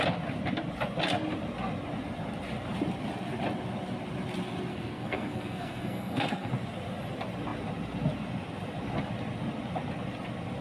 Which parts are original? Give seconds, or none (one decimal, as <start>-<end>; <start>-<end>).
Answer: 0.0-4.7; 6.5-10.6